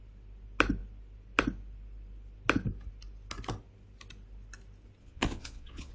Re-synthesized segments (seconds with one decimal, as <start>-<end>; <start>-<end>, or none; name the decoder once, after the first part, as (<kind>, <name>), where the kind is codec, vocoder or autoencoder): 5.0-5.9 (vocoder, Vocos)